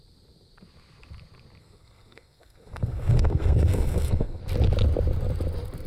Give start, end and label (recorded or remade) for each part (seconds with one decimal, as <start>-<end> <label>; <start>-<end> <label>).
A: 0.0-1.6 recorded; 1.6-4.4 remade; 4.4-5.9 recorded

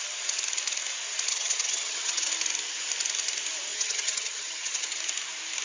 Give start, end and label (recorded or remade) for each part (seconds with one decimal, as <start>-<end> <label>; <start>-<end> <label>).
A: 0.0-1.3 recorded; 1.3-2.3 remade; 2.3-3.7 recorded; 3.7-5.0 remade; 5.0-5.6 recorded